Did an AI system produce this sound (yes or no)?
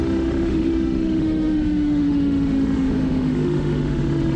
yes